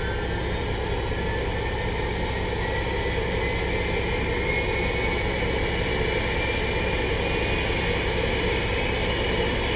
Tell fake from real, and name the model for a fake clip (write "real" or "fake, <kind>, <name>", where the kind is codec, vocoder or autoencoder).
real